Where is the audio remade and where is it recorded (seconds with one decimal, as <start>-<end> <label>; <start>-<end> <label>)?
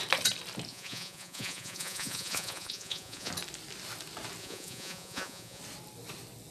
0.0-0.7 recorded; 0.7-3.3 remade; 3.3-4.4 recorded; 4.4-5.6 remade; 5.6-6.5 recorded